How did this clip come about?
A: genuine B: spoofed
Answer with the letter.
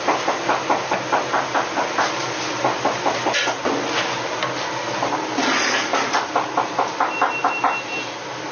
A